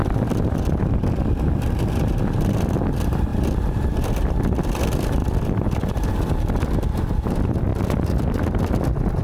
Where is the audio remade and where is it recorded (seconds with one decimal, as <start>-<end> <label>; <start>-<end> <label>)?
0.0-0.7 remade; 0.7-5.2 recorded; 5.2-5.8 remade; 5.8-9.2 recorded